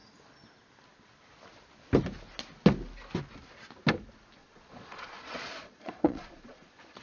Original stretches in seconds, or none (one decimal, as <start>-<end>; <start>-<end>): 0.0-4.4